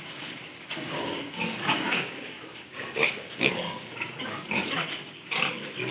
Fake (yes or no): yes